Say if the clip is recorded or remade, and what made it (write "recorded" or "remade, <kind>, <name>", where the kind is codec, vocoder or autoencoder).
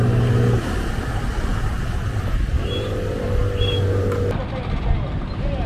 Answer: recorded